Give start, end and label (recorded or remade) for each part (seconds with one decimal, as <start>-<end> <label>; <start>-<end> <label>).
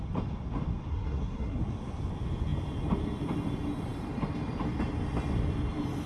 0.0-0.9 recorded; 0.9-1.6 remade; 1.6-6.1 recorded